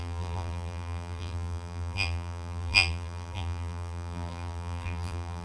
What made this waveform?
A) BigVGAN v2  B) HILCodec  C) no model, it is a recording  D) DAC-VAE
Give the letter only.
A